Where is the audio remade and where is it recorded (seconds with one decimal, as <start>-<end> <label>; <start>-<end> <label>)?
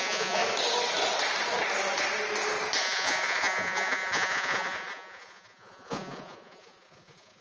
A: 0.0-0.4 remade; 0.4-2.8 recorded; 2.8-7.4 remade